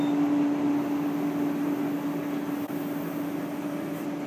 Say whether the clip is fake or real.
real